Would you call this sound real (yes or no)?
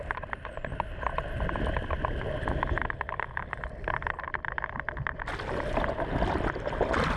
yes